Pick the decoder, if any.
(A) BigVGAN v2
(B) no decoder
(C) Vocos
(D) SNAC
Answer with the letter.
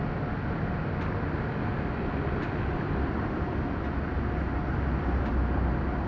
B